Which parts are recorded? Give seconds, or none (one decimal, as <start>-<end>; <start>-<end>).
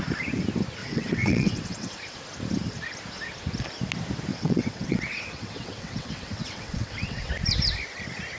0.0-0.8; 2.0-4.3; 7.2-8.4